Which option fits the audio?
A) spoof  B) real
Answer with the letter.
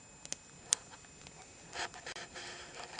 B